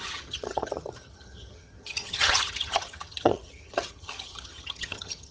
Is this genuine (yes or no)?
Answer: no